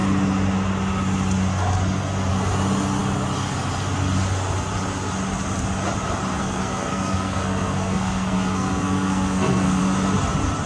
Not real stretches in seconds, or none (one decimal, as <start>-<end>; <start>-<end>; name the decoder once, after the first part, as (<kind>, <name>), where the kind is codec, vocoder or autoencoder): 6.4-9.8 (codec, SNAC)